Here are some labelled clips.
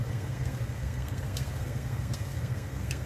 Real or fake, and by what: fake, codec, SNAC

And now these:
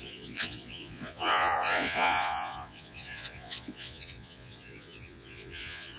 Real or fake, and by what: fake, vocoder, Vocos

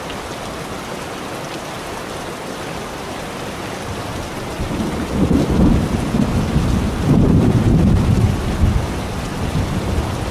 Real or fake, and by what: fake, vocoder, BigVGAN v2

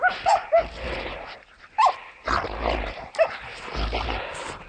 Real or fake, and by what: real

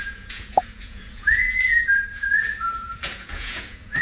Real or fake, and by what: fake, vocoder, Vocos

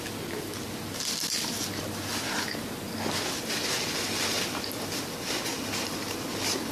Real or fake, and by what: real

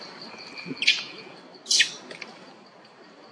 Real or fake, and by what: real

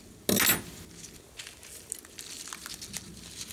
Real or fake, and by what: real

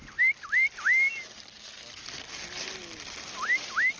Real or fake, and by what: real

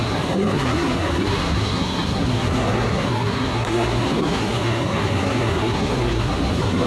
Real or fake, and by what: fake, codec, SNAC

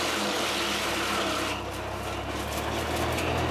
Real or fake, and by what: real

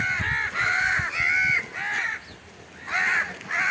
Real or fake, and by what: real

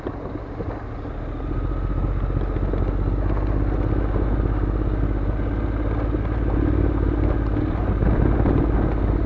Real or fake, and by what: real